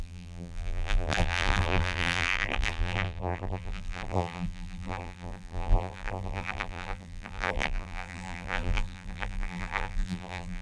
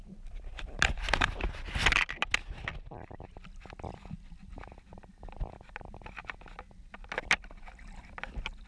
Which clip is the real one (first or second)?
second